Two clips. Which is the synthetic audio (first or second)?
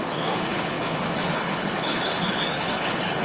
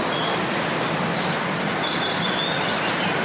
first